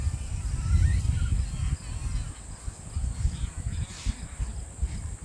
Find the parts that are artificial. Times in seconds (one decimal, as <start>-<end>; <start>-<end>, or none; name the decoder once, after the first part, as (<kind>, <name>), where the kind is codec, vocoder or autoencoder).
0.0-1.3 (vocoder, BigVGAN v2); 4.4-5.2

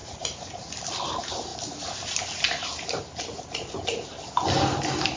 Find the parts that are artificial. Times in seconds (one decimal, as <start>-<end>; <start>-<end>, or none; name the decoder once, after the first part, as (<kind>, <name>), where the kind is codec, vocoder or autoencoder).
none

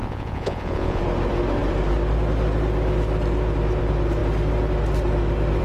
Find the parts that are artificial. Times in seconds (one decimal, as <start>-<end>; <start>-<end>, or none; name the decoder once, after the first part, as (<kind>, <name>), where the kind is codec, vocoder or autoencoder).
0.0-1.0 (vocoder, Vocos)

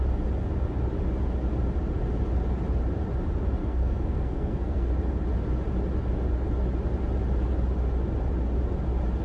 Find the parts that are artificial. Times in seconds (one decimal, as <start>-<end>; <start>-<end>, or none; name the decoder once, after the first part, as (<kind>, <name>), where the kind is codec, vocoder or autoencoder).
3.6-4.9 (codec, SNAC)

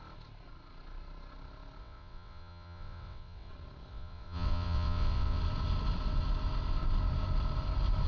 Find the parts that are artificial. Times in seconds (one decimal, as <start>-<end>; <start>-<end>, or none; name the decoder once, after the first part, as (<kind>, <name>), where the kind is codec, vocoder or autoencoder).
1.8-3.5 (vocoder, WaveNeXt); 3.9-5.4

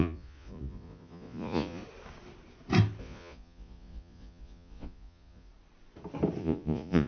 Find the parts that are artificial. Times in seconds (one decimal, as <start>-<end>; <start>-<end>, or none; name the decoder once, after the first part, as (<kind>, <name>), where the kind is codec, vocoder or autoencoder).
0.0-1.8 (vocoder, Vocos); 3.0-5.5; 6.4-7.1